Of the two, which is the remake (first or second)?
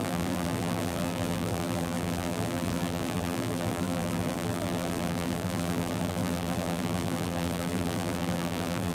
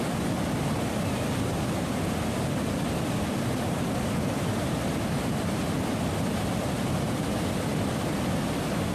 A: first